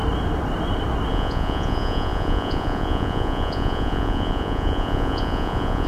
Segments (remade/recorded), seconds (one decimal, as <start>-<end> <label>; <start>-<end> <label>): 0.0-1.1 recorded; 1.1-5.9 remade